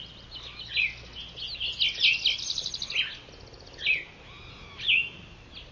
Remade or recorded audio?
recorded